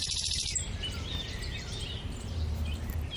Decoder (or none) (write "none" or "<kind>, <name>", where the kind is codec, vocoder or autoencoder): vocoder, BigVGAN v2